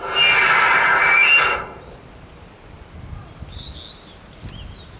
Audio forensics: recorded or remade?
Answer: recorded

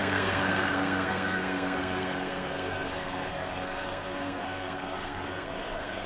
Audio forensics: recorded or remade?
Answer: remade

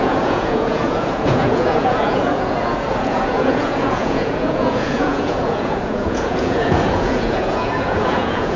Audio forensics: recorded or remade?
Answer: remade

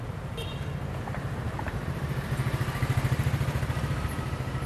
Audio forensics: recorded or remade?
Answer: remade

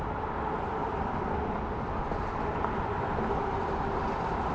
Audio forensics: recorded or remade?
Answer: recorded